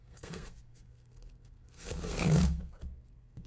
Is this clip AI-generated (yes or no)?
yes